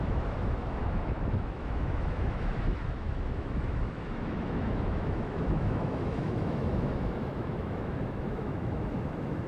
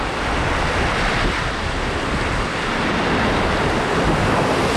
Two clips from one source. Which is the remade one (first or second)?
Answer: first